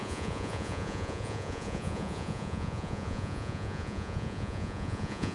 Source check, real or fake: fake